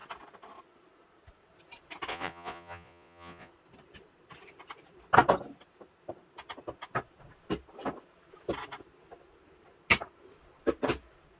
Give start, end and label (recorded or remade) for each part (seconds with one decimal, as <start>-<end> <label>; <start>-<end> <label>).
0.0-2.1 recorded; 2.1-3.5 remade; 3.5-11.4 recorded